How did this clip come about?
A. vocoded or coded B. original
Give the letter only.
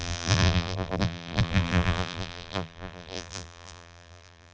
A